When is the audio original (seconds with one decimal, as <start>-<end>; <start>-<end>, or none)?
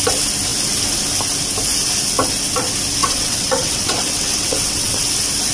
0.0-3.0; 5.1-5.5